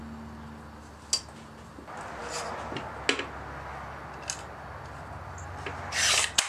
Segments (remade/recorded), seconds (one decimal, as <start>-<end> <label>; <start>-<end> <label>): 0.0-6.5 recorded